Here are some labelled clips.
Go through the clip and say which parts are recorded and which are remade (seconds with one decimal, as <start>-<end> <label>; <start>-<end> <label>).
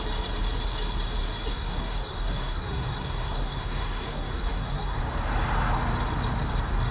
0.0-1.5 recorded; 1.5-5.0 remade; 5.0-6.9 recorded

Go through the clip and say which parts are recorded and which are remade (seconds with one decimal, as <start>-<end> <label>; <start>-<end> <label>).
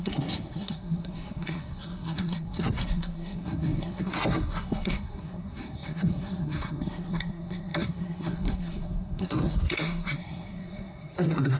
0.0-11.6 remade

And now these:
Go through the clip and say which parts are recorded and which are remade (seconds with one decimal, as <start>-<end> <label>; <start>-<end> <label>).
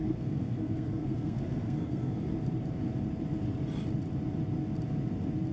0.0-2.3 remade; 2.3-5.5 recorded